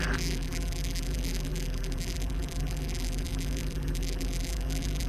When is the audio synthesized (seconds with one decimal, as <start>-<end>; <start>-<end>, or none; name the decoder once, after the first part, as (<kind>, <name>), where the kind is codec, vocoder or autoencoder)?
0.0-5.1 (vocoder, BigVGAN v2)